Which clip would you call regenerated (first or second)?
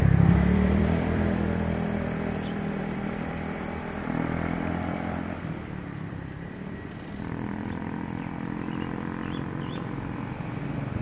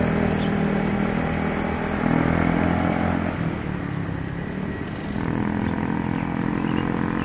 first